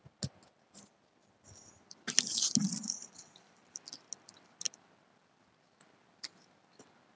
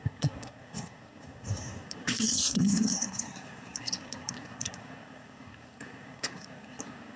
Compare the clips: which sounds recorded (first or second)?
first